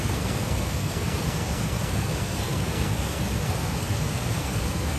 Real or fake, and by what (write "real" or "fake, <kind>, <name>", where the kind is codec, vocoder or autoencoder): fake, codec, SNAC